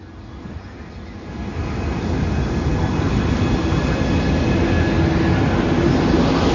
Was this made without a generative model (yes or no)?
yes